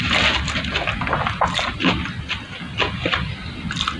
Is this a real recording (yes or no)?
yes